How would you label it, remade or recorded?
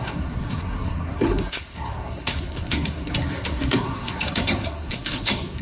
remade